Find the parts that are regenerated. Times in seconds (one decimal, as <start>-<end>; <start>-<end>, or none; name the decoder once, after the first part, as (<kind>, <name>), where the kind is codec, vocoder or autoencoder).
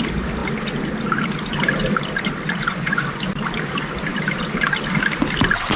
2.6-3.2 (vocoder, Vocos)